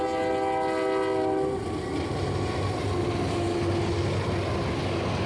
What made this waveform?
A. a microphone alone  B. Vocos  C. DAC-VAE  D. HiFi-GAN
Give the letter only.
A